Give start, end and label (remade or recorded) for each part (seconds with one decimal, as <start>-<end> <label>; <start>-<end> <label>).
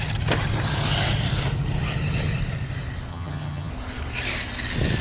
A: 0.0-3.1 recorded; 3.1-3.7 remade; 3.7-5.0 recorded